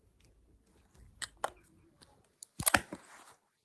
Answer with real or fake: real